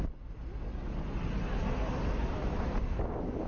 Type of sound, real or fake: real